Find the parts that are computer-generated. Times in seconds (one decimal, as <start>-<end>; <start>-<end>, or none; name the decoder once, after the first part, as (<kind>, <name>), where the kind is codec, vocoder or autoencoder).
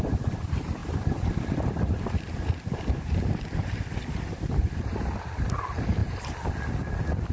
none